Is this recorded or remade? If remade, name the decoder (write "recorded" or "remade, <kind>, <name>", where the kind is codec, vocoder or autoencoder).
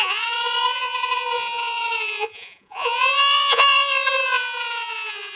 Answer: remade, vocoder, Vocos